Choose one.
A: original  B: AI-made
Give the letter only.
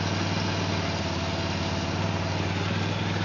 A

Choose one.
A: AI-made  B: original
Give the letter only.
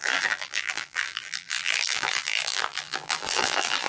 A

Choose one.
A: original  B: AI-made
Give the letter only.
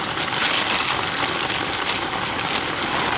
B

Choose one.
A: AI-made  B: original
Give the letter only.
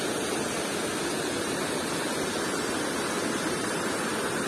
B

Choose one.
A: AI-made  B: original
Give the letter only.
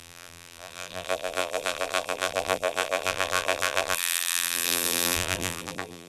A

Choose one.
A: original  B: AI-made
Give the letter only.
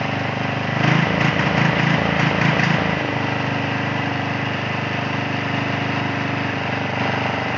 A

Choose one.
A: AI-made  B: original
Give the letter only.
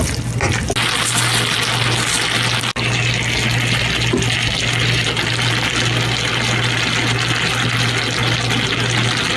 B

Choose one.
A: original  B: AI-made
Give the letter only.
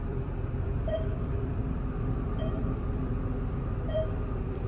B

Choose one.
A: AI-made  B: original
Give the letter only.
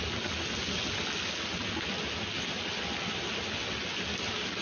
B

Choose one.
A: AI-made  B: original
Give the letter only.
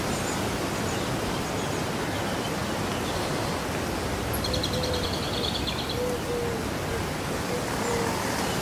B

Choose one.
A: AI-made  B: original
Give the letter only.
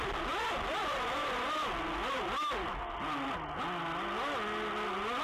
B